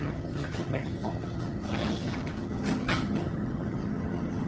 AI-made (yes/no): yes